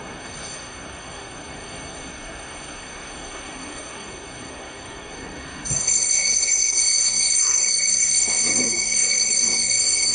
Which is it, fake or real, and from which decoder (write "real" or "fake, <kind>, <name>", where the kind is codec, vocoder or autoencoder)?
fake, codec, SNAC